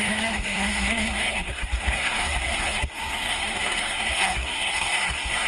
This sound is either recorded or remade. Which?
remade